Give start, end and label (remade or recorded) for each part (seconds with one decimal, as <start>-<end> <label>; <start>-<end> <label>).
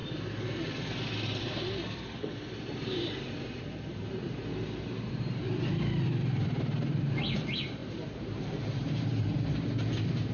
0.0-3.7 recorded; 3.7-10.3 remade